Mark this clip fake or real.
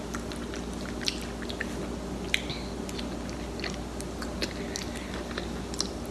real